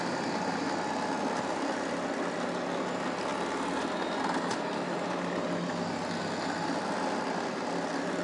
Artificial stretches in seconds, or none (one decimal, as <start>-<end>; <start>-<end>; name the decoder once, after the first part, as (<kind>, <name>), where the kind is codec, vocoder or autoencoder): none